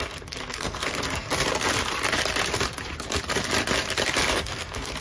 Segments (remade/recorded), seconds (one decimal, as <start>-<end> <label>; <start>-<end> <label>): 0.0-1.3 remade; 1.3-4.3 recorded; 4.3-5.0 remade